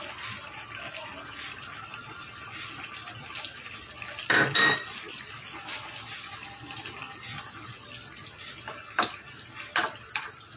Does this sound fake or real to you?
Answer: real